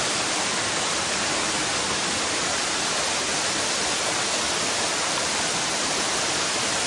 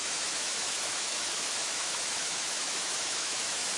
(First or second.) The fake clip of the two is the second